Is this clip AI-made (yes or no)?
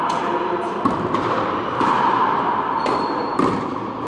yes